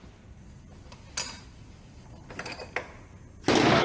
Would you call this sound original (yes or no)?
yes